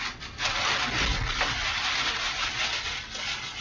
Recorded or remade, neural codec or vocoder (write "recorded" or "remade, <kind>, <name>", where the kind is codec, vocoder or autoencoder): recorded